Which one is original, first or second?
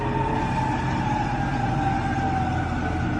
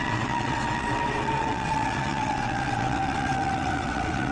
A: first